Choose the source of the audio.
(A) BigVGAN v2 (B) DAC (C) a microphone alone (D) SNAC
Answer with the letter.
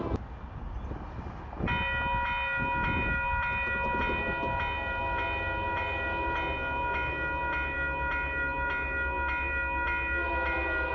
C